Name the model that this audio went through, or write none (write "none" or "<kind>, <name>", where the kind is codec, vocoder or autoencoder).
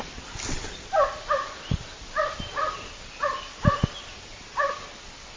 none